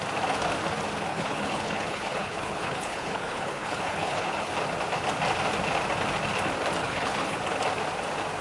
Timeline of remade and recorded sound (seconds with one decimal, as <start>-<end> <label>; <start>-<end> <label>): 0.0-1.1 recorded; 1.1-4.5 remade; 4.5-6.8 recorded; 6.8-7.4 remade; 7.4-8.4 recorded